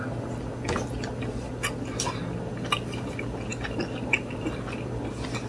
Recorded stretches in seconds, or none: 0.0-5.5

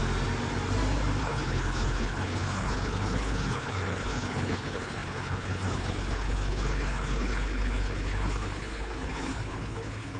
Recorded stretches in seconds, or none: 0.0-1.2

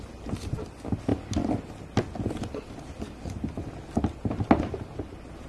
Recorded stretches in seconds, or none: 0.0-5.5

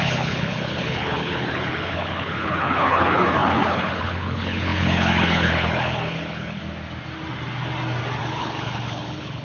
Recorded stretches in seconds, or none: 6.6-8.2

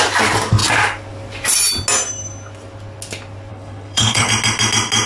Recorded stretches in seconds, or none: 0.0-3.5; 4.3-5.1